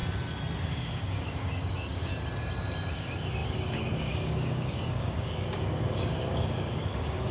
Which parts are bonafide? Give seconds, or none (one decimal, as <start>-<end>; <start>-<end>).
0.0-0.6; 2.1-2.9